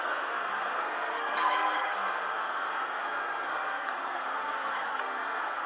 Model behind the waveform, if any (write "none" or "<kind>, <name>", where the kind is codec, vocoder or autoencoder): codec, SNAC